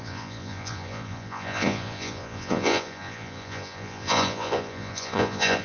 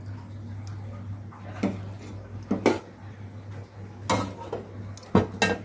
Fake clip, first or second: first